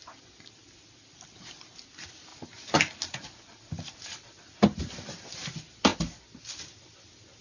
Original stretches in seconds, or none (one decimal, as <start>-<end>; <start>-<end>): 0.0-7.4

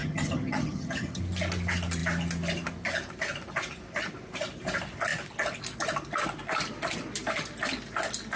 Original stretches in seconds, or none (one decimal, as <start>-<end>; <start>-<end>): 1.2-8.4

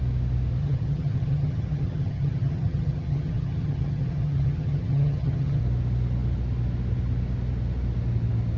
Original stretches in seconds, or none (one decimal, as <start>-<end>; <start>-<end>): 0.0-0.6; 5.6-8.6

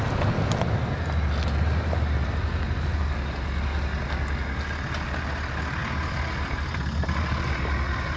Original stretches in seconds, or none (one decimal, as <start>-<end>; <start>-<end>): 0.0-8.2

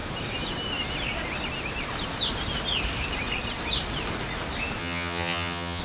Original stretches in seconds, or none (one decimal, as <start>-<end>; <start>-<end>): 0.0-4.8

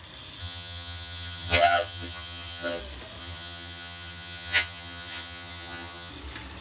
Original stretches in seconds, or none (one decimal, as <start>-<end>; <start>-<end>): 0.0-0.4; 2.8-3.2; 6.1-6.6

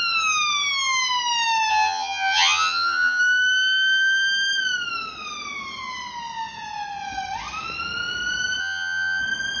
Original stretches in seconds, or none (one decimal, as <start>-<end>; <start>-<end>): 0.0-1.7; 3.2-8.6; 9.2-9.6